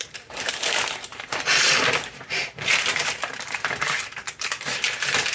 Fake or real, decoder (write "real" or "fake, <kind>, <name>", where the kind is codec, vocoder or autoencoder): fake, vocoder, BigVGAN v2